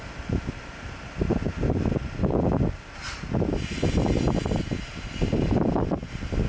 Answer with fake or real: real